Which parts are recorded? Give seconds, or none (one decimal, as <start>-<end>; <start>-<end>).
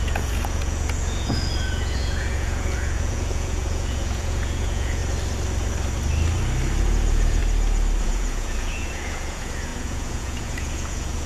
5.0-6.8; 7.4-8.0